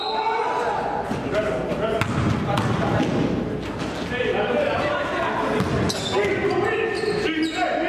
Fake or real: real